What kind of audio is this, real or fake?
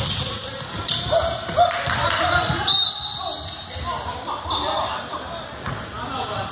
real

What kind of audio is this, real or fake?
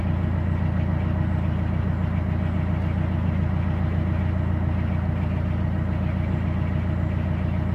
real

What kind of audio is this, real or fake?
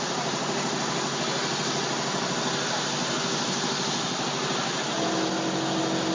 real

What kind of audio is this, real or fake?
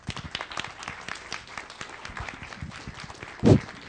real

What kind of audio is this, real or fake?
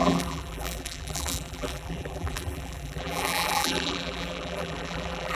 fake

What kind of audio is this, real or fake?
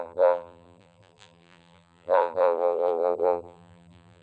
fake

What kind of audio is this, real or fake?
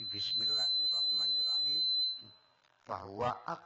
fake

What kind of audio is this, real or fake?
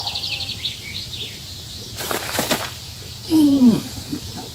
fake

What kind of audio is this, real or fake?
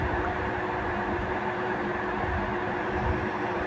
fake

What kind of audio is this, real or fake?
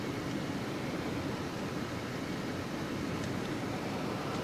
real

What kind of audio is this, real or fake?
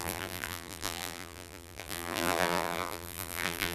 fake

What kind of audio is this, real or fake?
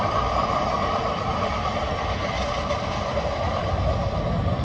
fake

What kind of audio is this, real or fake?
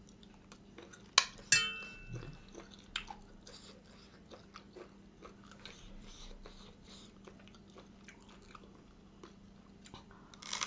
real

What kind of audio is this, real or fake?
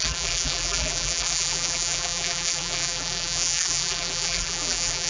fake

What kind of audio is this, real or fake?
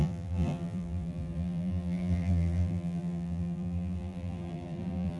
fake